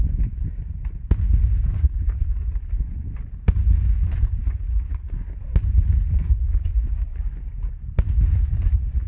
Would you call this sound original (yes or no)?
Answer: yes